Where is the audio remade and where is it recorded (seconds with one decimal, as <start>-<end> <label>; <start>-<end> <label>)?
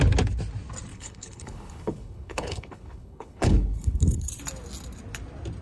0.0-0.9 recorded; 0.9-4.3 remade; 4.3-5.6 recorded